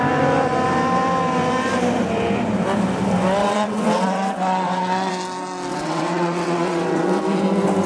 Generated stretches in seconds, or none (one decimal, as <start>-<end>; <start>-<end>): 3.4-5.1; 5.7-7.2